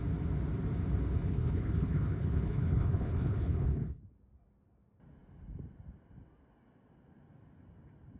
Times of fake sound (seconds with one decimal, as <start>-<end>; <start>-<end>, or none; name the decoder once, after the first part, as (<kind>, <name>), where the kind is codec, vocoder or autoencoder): 1.3-4.0 (codec, HILCodec)